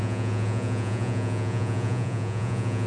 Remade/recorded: remade